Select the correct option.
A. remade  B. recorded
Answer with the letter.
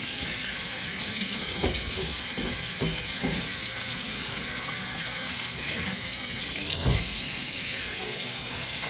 A